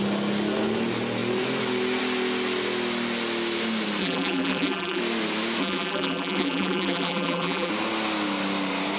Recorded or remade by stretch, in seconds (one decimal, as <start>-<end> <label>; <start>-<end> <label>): 0.0-4.0 recorded; 4.0-5.0 remade; 5.0-5.6 recorded; 5.6-7.7 remade; 7.7-9.0 recorded